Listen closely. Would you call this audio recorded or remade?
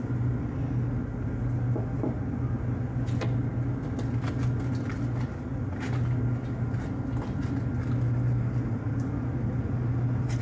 recorded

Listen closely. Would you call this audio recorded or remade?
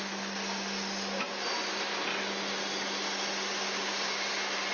recorded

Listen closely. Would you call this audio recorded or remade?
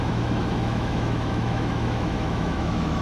remade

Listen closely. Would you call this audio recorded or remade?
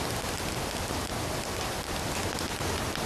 recorded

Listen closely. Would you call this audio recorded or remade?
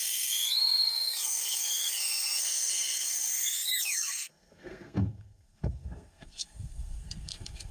remade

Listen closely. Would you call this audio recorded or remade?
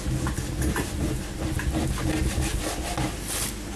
recorded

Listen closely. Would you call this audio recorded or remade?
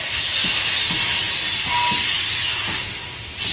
recorded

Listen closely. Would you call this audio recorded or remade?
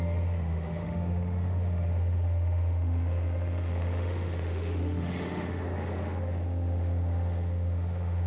remade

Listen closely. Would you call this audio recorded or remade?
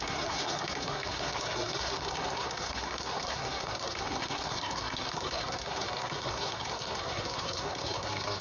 remade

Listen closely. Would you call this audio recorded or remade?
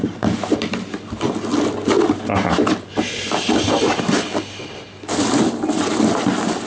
recorded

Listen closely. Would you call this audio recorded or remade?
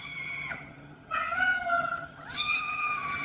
remade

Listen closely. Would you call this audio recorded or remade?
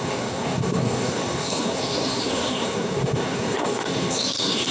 remade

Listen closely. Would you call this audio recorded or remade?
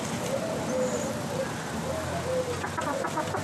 recorded